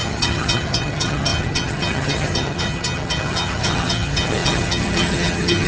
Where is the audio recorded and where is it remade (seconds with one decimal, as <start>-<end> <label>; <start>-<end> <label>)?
0.0-5.7 remade